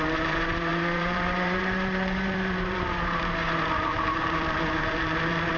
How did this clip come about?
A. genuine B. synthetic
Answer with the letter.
B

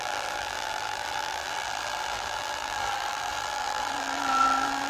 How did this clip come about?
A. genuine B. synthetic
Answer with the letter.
B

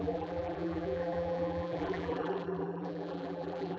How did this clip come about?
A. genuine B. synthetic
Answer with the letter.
B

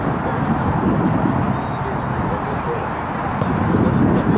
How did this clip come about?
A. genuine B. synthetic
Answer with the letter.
A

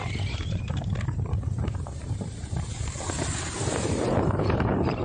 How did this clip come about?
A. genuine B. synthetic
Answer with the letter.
B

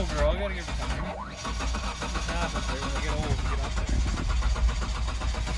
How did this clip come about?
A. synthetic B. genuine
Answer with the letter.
B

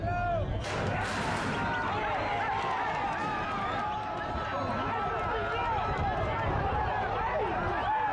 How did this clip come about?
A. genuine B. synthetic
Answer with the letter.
A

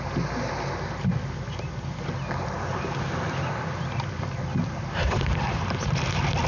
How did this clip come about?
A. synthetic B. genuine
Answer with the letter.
B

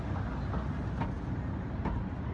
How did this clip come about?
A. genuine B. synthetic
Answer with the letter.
A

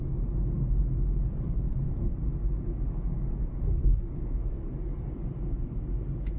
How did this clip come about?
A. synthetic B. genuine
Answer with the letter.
B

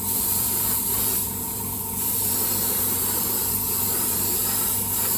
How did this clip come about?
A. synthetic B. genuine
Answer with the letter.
A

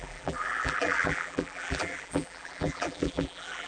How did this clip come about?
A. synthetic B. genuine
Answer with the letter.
A